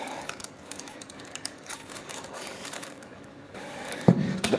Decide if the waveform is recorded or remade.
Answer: remade